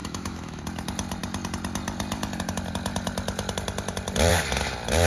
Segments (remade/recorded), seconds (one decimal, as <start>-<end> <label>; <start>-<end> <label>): 0.0-0.6 remade; 0.6-5.1 recorded